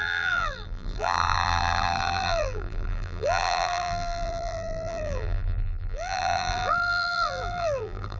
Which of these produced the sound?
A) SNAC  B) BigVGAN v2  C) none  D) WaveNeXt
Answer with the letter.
B